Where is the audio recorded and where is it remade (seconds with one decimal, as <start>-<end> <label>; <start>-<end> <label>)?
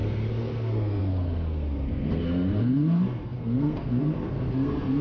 0.0-5.0 remade